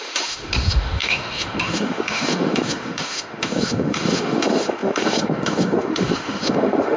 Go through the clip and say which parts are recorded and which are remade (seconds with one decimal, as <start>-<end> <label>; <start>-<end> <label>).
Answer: 0.0-7.0 remade